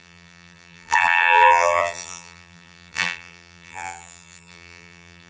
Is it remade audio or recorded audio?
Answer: remade